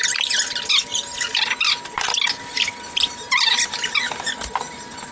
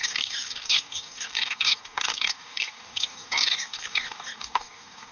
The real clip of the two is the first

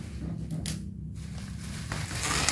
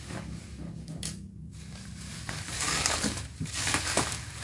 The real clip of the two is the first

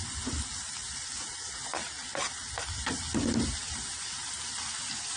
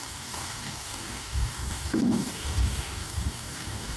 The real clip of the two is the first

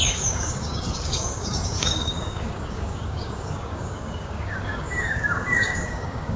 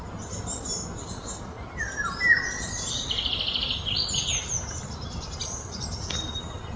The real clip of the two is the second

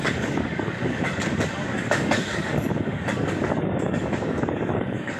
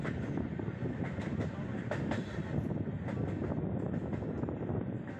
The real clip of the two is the second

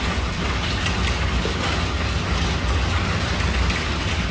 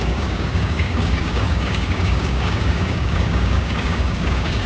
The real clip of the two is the first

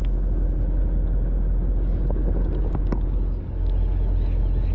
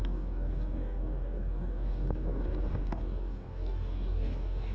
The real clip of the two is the first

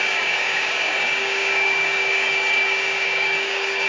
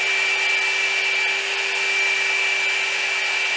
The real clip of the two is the second